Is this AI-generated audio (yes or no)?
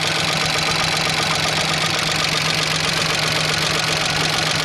no